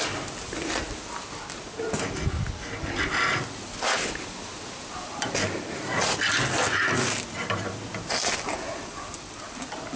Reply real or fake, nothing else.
real